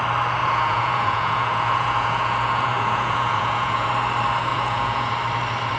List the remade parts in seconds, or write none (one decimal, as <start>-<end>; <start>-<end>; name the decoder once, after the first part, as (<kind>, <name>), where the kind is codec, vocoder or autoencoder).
0.4-3.9 (vocoder, Vocos); 4.5-5.1